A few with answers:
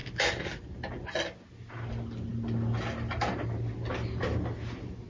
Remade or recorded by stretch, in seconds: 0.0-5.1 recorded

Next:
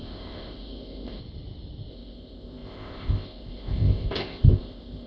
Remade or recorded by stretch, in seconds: 0.0-1.2 remade; 1.2-1.9 recorded; 1.9-5.1 remade

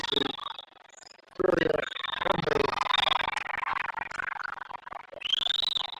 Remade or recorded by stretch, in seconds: 0.0-0.4 recorded; 0.4-2.2 remade; 2.2-3.7 recorded; 3.7-5.3 remade; 5.3-6.0 recorded

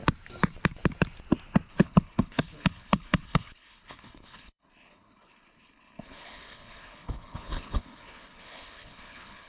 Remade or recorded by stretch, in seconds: 0.0-1.7 recorded; 1.7-9.5 remade

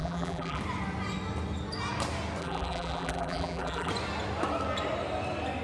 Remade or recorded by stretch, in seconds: 0.0-0.6 remade; 0.6-2.4 recorded; 2.4-3.9 remade; 3.9-5.6 recorded

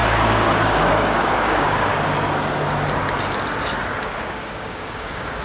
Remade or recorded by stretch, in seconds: 0.0-1.9 remade; 1.9-4.0 recorded; 4.0-5.4 remade

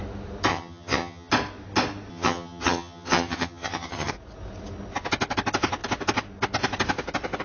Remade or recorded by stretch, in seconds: 0.0-0.5 recorded; 0.5-1.3 remade; 1.3-2.1 recorded; 2.1-4.1 remade; 4.1-7.4 recorded